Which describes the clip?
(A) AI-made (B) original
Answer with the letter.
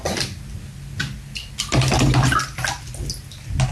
B